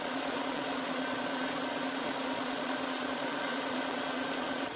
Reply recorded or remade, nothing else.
remade